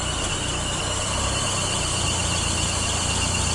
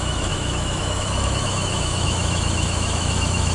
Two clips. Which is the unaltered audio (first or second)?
first